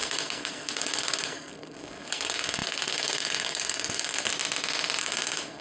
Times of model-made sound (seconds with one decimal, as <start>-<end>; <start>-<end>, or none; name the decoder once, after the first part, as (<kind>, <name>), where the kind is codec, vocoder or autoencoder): 0.0-4.3 (codec, SNAC); 5.0-5.6

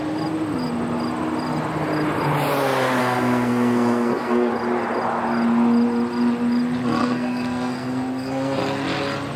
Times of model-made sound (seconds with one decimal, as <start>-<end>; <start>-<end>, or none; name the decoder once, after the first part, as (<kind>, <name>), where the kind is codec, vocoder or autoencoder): 3.0-4.5 (codec, SNAC); 7.0-8.6